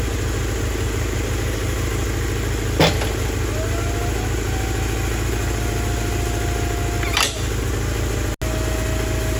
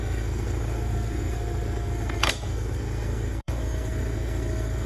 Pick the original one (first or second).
first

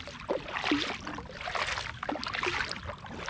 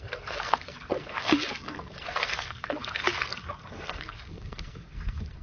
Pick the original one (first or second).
first